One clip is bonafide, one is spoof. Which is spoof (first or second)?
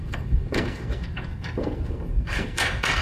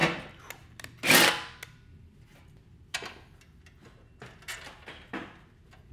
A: first